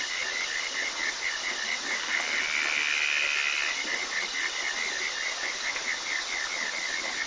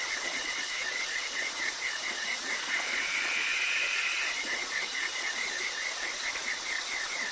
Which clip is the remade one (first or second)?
second